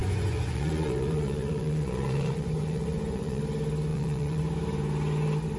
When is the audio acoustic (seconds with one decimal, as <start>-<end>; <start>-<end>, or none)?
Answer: 3.4-3.9; 4.4-5.6